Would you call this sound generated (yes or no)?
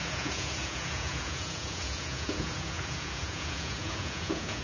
yes